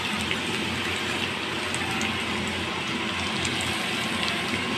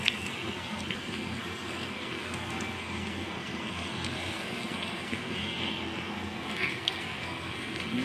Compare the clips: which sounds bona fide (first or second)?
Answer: first